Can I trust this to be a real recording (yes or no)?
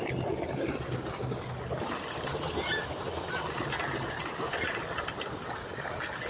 yes